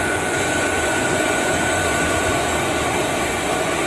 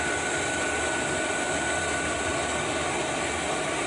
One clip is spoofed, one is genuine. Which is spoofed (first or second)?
first